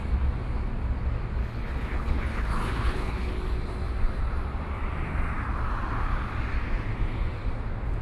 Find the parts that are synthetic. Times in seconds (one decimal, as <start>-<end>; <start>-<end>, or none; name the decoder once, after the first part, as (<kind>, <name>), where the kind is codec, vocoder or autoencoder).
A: 1.4-3.3 (codec, HILCodec)

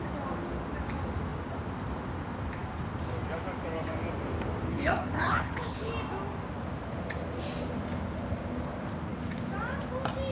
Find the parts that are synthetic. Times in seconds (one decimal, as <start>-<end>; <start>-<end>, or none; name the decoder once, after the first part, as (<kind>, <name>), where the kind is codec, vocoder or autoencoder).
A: 4.7-5.9 (codec, HILCodec)

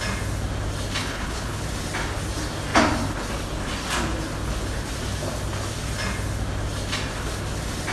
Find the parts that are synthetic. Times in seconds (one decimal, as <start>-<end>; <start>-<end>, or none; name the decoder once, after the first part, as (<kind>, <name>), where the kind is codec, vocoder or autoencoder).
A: 1.0-1.6 (codec, HILCodec)

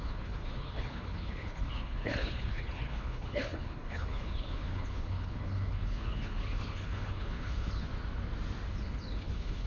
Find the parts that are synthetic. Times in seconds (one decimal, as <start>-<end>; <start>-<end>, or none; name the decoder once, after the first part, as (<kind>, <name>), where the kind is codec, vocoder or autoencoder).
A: 0.0-7.9 (codec, HILCodec); 8.7-9.7

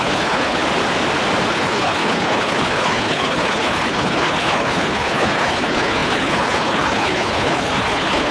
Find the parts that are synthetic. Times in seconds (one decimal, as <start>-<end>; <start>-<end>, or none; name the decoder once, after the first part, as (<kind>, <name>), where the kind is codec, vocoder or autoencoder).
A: 0.0-0.6 (codec, HILCodec); 1.5-8.3

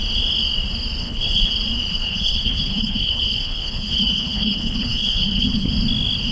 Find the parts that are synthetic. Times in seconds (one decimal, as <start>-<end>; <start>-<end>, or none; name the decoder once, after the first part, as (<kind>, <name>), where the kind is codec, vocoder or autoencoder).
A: 1.0-1.5 (codec, HILCodec); 1.9-5.7